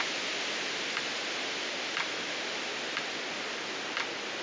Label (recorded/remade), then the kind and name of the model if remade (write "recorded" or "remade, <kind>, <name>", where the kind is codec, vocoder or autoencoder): recorded